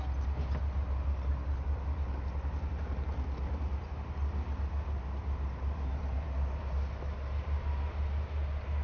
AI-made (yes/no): no